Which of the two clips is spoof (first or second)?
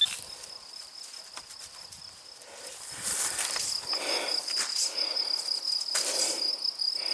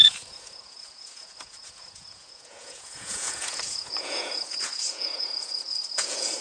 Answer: second